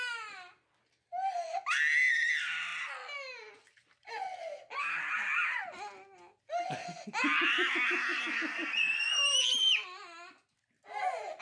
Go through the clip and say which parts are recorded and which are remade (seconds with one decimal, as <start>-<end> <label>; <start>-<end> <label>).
0.0-11.4 recorded